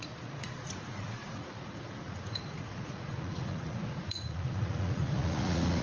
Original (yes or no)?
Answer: no